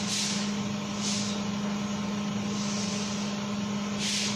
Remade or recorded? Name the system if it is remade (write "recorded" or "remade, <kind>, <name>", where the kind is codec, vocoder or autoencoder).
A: recorded